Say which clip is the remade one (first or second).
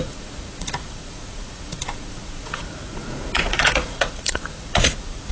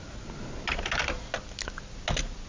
first